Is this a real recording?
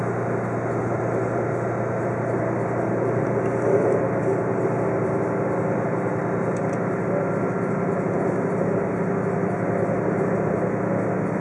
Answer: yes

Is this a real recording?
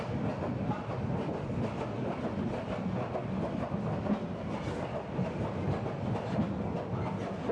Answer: yes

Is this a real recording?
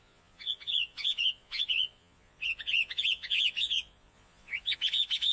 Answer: no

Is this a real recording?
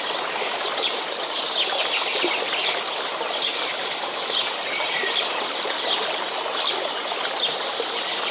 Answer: yes